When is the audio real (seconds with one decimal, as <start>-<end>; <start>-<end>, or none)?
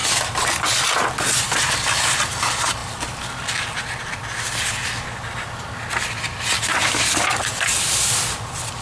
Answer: 0.0-8.8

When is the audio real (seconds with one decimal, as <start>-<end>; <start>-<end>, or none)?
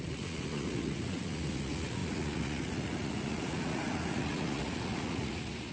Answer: none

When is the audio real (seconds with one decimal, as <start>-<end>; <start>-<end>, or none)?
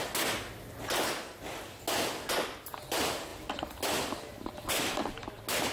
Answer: 0.0-5.7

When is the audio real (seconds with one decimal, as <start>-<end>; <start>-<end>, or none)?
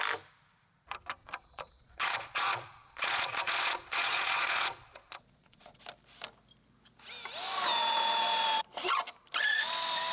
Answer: 0.0-1.2; 5.8-10.1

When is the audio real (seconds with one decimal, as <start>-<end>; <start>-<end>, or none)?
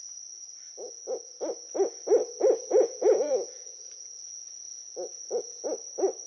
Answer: 0.0-0.7; 1.4-2.2; 5.6-6.3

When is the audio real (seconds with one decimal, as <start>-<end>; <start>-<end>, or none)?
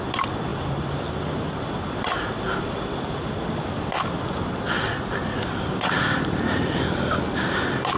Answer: 0.0-8.0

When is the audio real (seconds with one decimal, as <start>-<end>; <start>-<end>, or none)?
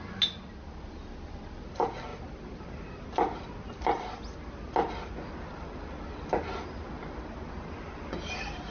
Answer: 0.0-8.7